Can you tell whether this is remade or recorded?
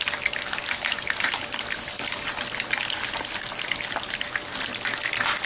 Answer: recorded